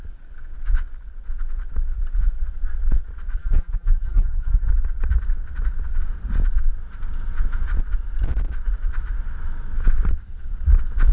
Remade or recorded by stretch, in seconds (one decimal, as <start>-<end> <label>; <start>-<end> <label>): 0.0-3.4 recorded; 3.4-4.7 remade; 4.7-11.1 recorded